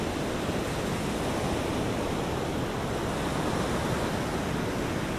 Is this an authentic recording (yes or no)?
yes